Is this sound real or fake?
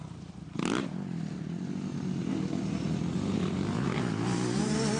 real